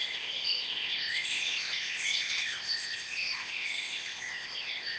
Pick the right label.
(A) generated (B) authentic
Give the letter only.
A